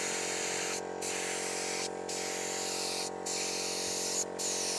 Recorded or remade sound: recorded